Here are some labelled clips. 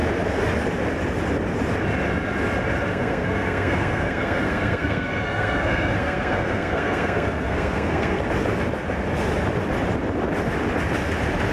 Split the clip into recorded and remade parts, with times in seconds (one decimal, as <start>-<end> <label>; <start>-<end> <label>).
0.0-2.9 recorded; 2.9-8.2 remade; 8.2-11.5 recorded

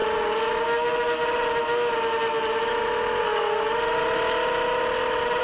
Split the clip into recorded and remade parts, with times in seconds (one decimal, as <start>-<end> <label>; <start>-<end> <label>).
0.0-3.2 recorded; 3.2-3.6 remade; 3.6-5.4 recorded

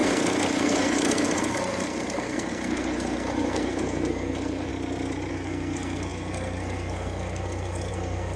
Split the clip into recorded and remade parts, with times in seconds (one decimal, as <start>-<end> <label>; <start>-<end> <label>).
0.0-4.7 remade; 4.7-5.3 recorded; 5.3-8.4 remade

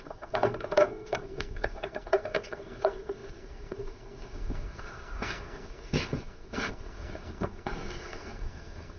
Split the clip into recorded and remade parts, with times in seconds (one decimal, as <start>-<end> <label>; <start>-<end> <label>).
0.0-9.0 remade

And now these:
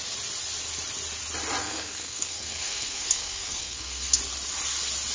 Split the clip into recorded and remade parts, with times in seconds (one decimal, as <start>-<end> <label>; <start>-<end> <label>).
0.0-1.6 recorded; 1.6-4.2 remade; 4.2-5.1 recorded

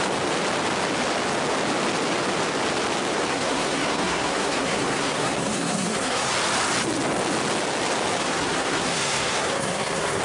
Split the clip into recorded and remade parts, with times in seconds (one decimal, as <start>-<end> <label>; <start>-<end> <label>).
0.0-3.3 recorded; 3.3-6.3 remade; 6.3-8.2 recorded; 8.2-10.2 remade